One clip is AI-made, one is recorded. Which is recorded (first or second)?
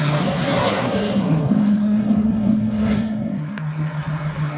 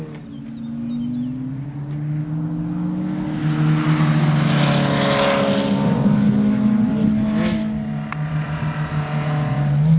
second